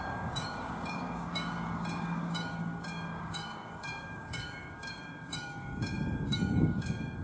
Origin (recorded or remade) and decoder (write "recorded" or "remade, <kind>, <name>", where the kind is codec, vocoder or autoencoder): remade, codec, DAC